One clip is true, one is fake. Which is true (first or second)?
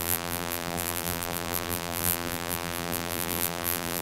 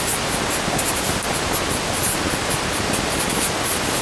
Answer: second